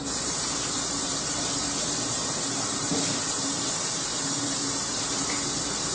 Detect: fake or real fake